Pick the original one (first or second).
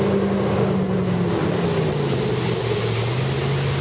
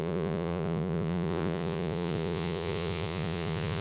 first